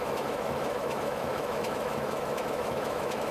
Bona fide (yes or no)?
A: no